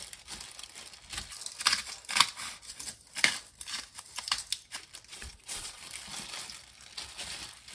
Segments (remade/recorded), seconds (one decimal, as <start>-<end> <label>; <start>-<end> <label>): 0.0-5.1 recorded; 5.1-5.8 remade; 5.8-7.7 recorded